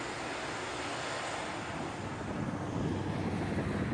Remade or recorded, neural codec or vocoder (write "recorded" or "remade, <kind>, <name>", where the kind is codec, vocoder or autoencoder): recorded